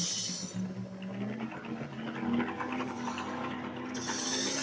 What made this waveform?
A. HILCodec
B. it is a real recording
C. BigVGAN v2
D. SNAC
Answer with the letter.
B